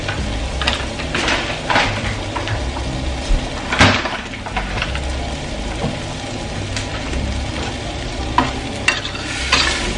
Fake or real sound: real